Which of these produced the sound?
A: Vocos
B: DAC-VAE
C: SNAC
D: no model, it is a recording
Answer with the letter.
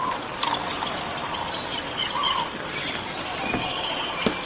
D